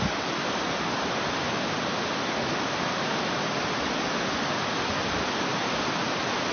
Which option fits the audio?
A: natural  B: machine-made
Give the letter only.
A